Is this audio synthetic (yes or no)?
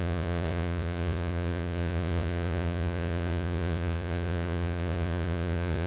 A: yes